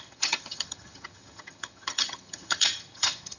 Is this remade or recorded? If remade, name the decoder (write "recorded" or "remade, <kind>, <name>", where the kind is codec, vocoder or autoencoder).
remade, vocoder, HiFi-GAN